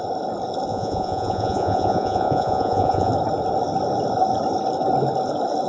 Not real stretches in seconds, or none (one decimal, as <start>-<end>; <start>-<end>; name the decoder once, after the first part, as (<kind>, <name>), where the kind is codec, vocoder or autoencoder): 0.7-3.1 (vocoder, Vocos)

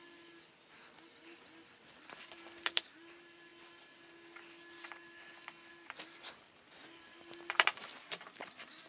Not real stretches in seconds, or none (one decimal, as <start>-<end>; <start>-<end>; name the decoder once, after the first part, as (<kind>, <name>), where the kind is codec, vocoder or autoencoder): 0.0-3.5 (vocoder, BigVGAN v2); 5.7-7.1; 8.1-8.9

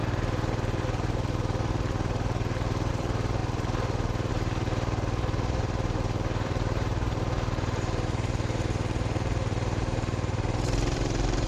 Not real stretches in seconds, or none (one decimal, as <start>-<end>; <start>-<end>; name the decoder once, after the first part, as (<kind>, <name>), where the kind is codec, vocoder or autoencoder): 0.0-3.4 (vocoder, BigVGAN v2); 4.3-11.5

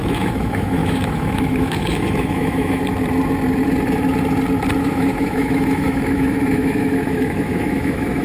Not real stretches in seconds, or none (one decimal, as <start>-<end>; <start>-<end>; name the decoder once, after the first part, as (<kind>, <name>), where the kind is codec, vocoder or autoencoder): 0.0-2.8 (autoencoder, DAC-VAE); 4.8-8.2

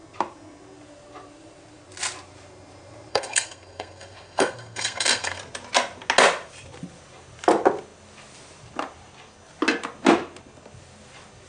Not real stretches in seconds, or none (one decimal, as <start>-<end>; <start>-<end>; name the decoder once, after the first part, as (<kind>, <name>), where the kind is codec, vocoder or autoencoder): 3.1-5.4 (codec, SNAC)